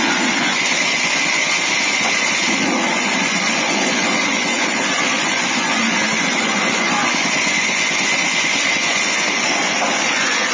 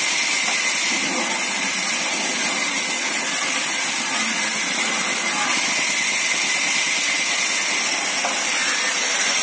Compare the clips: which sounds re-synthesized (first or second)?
first